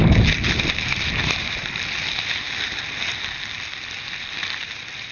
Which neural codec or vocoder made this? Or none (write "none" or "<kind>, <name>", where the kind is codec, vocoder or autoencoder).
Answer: none